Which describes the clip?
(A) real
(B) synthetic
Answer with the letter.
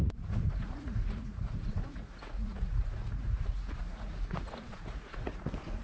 B